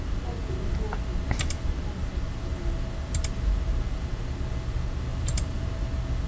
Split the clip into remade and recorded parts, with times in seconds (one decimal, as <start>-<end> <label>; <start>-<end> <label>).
0.0-5.1 recorded; 5.1-5.7 remade; 5.7-6.3 recorded